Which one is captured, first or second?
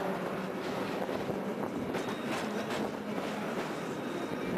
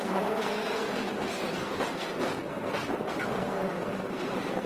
first